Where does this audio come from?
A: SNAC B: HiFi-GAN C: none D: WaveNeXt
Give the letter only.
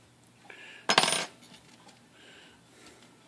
C